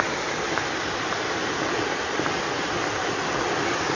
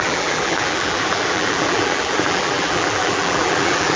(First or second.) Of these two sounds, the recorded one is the first